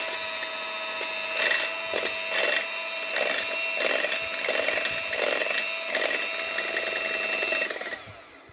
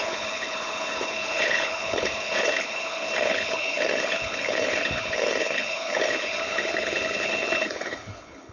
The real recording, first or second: first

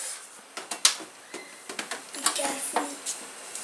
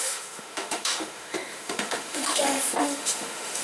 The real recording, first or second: first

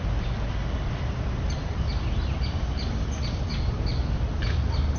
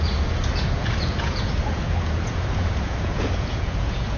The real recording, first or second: first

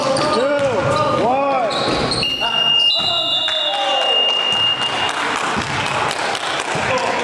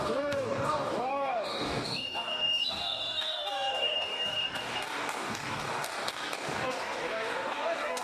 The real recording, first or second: first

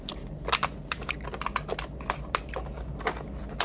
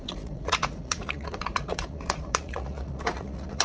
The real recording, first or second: first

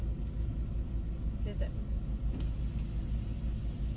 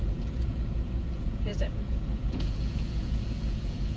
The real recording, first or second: first